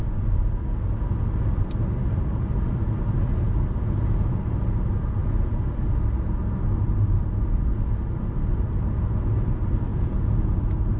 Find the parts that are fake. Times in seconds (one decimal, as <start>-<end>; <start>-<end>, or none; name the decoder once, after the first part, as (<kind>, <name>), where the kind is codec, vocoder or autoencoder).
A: 9.9-10.5 (vocoder, Vocos)